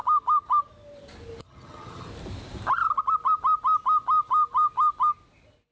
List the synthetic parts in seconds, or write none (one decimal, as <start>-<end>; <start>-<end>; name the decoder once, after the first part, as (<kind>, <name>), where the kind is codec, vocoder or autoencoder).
1.4-2.1 (vocoder, HiFi-GAN)